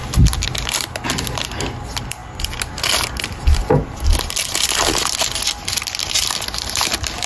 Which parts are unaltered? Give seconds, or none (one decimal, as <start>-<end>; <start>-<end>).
0.0-7.3